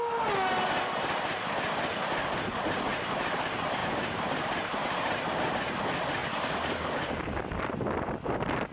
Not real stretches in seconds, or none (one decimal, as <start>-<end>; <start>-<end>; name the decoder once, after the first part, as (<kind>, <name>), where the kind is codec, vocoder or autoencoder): 2.9-3.4 (vocoder, BigVGAN v2); 3.8-5.5; 6.2-6.7